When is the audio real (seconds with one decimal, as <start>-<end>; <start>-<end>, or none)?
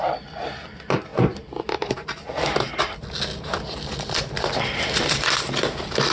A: none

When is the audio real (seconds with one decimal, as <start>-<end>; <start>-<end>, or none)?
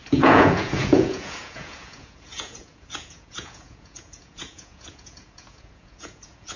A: none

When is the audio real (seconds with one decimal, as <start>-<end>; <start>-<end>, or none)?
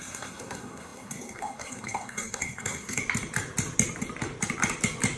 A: 3.0-5.2